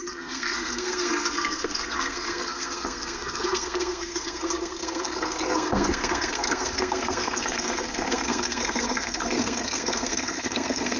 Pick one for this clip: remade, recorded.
remade